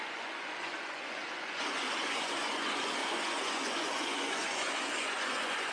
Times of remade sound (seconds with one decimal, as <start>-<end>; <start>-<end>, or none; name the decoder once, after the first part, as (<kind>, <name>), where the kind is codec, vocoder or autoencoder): 0.0-5.7 (vocoder, Vocos)